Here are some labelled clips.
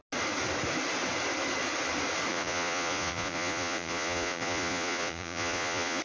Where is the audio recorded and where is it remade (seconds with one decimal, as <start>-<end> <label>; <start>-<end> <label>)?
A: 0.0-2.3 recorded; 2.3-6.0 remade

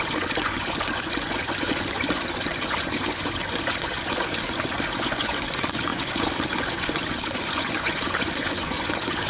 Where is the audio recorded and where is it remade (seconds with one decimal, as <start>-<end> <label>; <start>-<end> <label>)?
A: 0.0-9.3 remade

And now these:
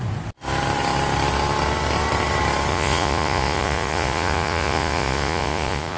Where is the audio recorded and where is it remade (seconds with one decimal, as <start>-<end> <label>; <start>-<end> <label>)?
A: 0.0-2.7 recorded; 2.7-6.0 remade

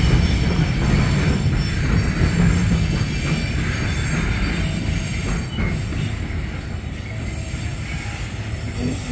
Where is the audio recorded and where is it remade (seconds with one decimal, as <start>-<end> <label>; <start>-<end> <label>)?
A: 0.0-9.1 recorded